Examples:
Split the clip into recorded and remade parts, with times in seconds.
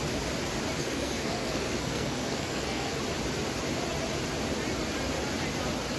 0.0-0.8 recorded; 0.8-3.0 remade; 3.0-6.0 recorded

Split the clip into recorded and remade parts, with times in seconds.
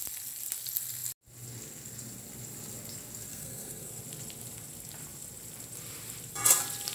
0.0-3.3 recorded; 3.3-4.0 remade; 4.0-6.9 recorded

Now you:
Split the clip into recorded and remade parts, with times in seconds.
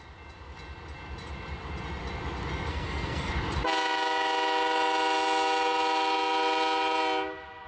0.0-2.7 recorded; 2.7-3.3 remade; 3.3-7.7 recorded